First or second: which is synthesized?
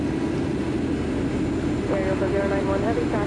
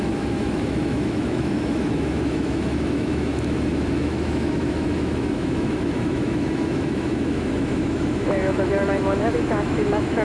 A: second